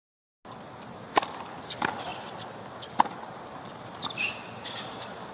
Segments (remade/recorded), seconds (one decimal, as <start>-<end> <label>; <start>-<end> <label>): 0.0-5.3 recorded